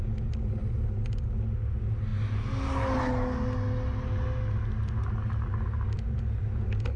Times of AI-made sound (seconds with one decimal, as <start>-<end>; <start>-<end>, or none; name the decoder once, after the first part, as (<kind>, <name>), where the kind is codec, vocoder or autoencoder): none